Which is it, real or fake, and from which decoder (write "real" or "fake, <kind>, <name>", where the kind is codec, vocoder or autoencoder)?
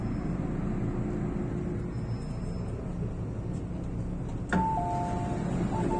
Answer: real